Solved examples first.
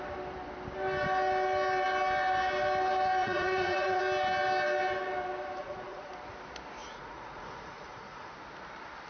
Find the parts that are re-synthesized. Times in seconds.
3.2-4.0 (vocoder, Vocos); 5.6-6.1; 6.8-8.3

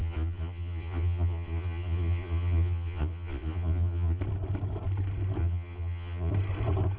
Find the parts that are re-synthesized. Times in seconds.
0.0-4.2 (vocoder, Vocos); 5.4-6.3

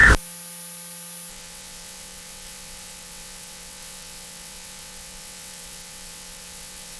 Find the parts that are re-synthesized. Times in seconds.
1.3-7.0 (vocoder, WaveNeXt)

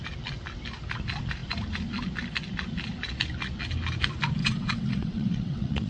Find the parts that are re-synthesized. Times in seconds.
4.4-5.9 (vocoder, WaveNeXt)